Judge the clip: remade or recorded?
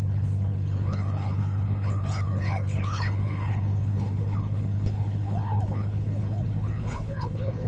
remade